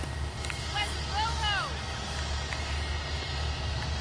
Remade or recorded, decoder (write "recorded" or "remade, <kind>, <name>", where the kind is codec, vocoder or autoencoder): recorded